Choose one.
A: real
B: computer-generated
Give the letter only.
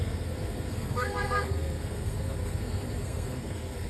B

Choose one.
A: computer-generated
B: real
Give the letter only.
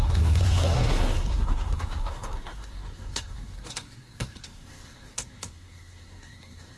A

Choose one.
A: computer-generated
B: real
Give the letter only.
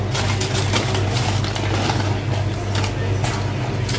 B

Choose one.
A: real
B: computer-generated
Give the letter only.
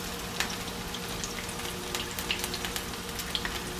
A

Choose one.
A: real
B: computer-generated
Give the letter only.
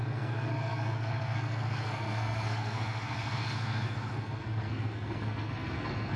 B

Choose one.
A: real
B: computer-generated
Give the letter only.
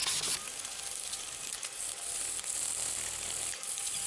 A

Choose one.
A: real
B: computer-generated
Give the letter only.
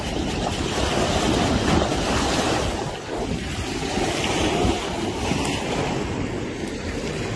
A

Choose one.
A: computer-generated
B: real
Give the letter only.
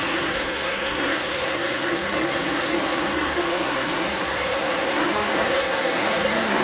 A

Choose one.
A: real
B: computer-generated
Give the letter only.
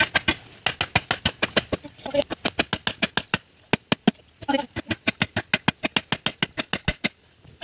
A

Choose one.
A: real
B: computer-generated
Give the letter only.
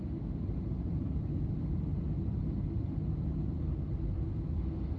A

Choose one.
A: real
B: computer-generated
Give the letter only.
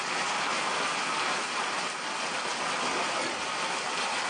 A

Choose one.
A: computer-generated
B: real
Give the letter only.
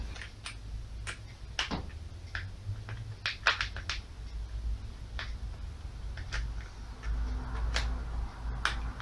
B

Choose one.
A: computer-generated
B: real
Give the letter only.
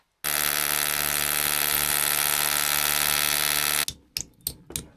B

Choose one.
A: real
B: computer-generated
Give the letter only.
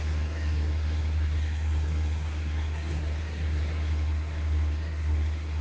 B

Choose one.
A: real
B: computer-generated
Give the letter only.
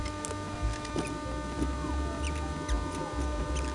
A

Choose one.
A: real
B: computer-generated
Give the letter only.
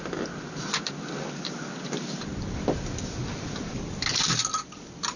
A